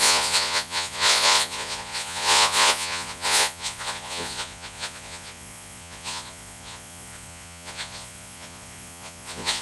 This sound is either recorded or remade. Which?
remade